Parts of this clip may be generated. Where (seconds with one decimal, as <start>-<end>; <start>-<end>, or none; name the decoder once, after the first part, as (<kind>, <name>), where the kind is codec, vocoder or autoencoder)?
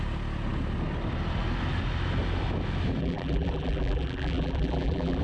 3.0-5.2 (vocoder, BigVGAN v2)